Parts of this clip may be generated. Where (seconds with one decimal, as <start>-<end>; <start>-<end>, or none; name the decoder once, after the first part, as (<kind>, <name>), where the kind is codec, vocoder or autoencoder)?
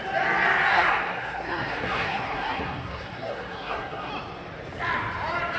0.7-4.1 (codec, SNAC)